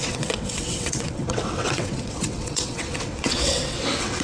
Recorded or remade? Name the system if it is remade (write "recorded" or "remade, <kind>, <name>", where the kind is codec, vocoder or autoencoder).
remade, vocoder, WaveNeXt